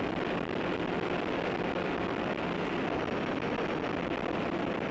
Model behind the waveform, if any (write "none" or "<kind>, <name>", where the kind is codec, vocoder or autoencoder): vocoder, BigVGAN v2